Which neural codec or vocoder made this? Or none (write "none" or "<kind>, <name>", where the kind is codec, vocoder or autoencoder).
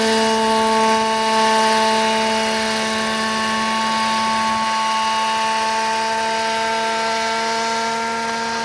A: none